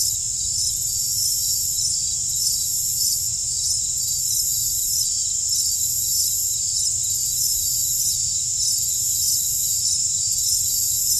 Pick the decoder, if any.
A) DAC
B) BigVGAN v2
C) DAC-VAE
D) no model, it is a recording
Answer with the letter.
B